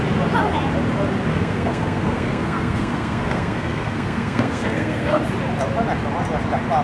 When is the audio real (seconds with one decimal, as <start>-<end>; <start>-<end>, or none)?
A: 0.0-1.3; 5.2-6.8